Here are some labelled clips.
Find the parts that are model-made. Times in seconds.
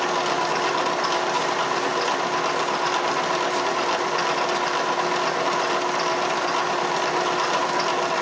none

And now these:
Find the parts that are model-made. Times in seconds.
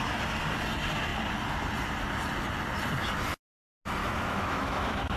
4.0-5.2 (autoencoder, DAC-VAE)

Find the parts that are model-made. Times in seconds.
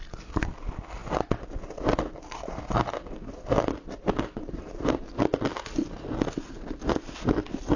none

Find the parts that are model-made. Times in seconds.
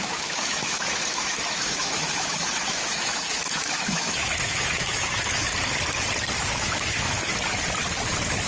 0.0-5.5 (autoencoder, DAC-VAE); 6.5-7.3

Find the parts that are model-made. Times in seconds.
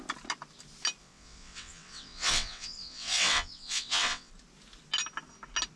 1.0-4.3 (vocoder, WaveNeXt)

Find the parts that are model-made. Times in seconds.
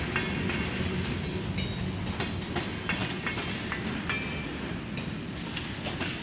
none